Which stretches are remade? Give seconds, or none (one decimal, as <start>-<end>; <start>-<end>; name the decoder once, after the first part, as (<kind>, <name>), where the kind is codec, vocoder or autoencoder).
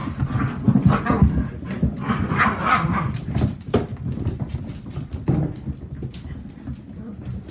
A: none